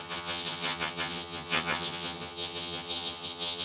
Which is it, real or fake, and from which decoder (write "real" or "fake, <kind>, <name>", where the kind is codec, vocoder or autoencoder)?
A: fake, vocoder, HiFi-GAN